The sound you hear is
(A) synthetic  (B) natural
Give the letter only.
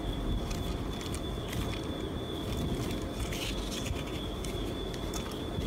B